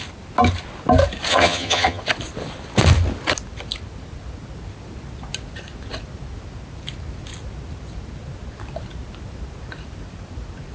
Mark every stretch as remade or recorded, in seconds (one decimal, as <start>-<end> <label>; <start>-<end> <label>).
0.0-1.3 recorded; 1.3-2.0 remade; 2.0-10.7 recorded